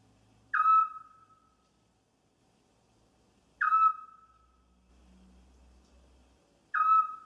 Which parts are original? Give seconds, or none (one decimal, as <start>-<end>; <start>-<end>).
0.0-0.8; 2.4-7.3